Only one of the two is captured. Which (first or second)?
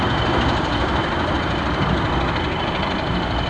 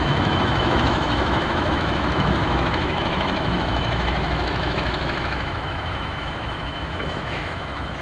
first